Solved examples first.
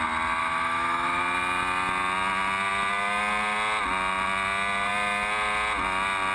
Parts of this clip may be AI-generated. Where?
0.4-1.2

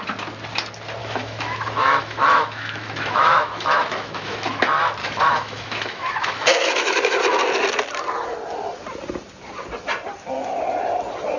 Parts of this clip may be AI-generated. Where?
1.0-4.6; 5.0-7.2